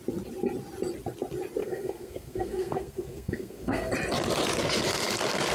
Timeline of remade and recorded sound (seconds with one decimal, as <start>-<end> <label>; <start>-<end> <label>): 0.0-1.6 recorded; 1.6-3.9 remade; 3.9-5.5 recorded